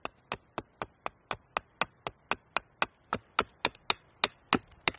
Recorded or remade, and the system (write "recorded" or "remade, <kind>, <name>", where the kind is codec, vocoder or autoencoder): recorded